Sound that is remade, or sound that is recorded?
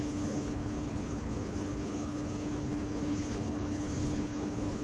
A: remade